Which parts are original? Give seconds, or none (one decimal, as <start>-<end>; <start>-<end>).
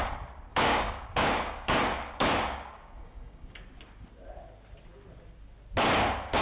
0.0-0.5; 3.6-6.4